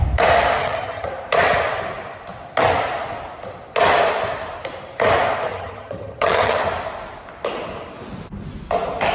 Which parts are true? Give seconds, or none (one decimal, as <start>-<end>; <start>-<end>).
0.0-0.6; 1.1-5.5; 6.6-9.1